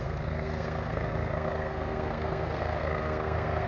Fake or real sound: fake